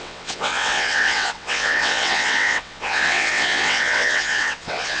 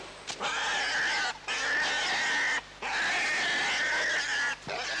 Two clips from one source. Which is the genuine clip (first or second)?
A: second